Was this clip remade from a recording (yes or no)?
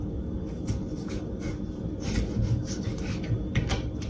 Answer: yes